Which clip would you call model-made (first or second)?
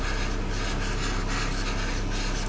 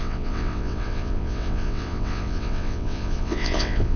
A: second